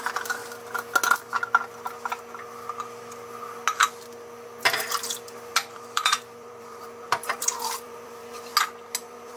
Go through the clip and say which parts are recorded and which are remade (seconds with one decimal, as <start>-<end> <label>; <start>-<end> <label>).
0.0-0.4 remade; 0.4-4.6 recorded; 4.6-8.5 remade; 8.5-9.0 recorded; 9.0-9.4 remade